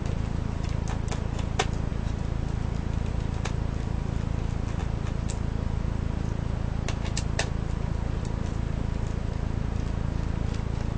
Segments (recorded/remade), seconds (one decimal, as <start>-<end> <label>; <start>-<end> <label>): 0.0-11.0 recorded